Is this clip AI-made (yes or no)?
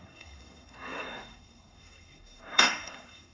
yes